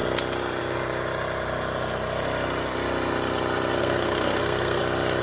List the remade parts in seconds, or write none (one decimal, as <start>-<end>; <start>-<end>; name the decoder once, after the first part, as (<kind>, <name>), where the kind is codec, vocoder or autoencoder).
3.8-4.8 (codec, SNAC)